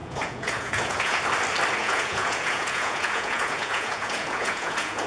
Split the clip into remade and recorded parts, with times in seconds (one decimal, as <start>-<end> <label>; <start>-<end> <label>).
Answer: 0.0-1.2 remade; 1.2-1.8 recorded; 1.8-5.1 remade